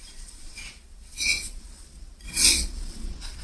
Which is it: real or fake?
fake